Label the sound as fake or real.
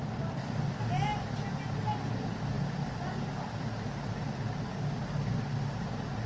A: real